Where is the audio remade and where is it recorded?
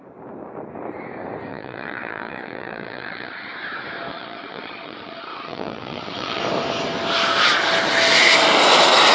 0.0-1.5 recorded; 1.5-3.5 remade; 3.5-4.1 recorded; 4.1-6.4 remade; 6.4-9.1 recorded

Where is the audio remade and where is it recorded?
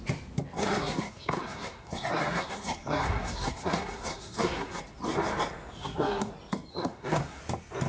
0.0-0.6 recorded; 0.6-4.8 remade; 4.8-5.8 recorded; 5.8-6.3 remade; 6.3-6.7 recorded; 6.7-7.4 remade; 7.4-7.9 recorded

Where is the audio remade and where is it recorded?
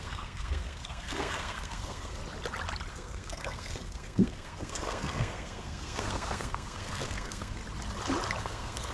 0.0-2.2 remade; 2.2-2.9 recorded; 2.9-7.6 remade; 7.6-8.4 recorded; 8.4-8.9 remade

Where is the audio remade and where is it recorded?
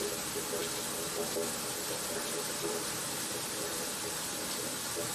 0.0-5.1 recorded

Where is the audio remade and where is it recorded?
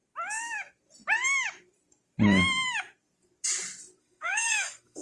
0.0-4.0 recorded; 4.0-5.0 remade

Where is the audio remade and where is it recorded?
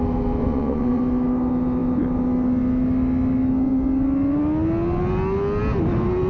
0.0-0.4 recorded; 0.4-1.0 remade; 1.0-6.3 recorded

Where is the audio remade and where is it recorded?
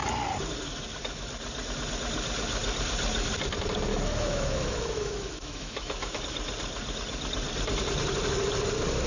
0.0-3.9 recorded; 3.9-6.2 remade; 6.2-9.1 recorded